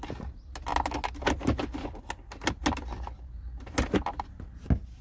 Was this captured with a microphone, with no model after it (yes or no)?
yes